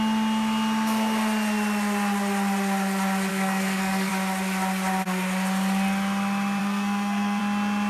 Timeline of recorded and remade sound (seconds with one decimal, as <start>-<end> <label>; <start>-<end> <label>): 0.0-3.3 recorded; 3.3-4.1 remade; 4.1-6.6 recorded; 6.6-7.4 remade; 7.4-7.9 recorded